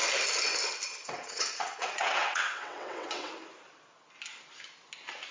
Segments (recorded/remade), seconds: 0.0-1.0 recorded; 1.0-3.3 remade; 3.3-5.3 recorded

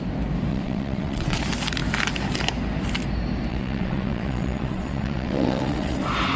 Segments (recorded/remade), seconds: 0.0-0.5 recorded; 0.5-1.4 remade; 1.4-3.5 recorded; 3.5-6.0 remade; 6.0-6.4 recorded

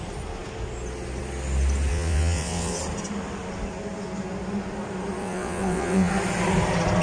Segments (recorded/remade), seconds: 0.0-1.9 recorded; 1.9-2.8 remade; 2.8-5.2 recorded; 5.2-6.1 remade; 6.1-7.0 recorded